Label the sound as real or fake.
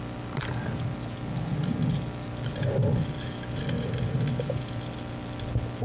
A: real